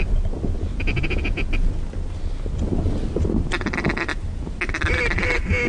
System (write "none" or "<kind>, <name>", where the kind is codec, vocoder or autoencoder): none